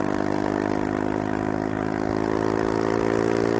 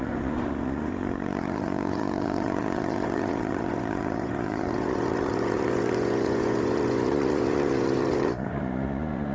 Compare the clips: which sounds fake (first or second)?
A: second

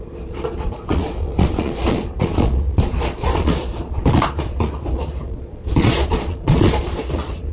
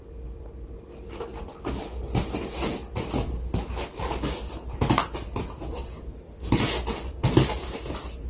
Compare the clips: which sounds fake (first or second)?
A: first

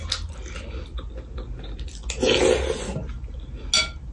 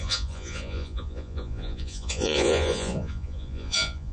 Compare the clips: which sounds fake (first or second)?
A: second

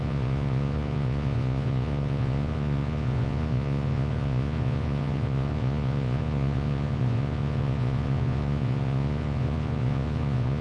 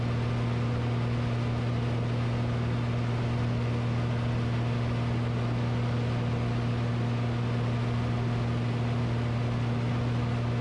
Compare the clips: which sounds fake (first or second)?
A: first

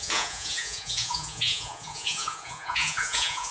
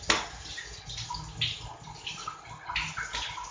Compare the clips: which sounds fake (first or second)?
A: first